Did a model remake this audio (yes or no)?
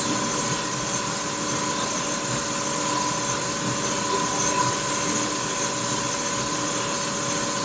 no